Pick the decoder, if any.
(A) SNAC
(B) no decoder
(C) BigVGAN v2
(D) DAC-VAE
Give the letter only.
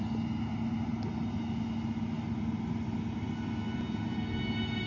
B